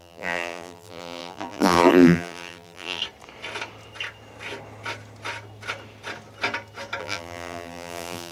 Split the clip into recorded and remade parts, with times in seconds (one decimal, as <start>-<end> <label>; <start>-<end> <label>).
0.0-3.0 remade; 3.0-7.0 recorded; 7.0-8.3 remade